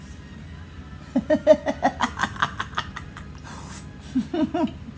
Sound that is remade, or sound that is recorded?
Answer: recorded